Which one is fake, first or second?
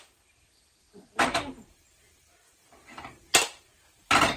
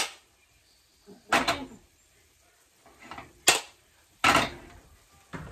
first